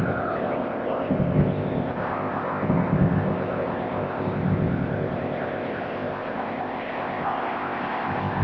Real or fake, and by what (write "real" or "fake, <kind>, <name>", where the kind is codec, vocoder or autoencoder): fake, codec, ZipCodec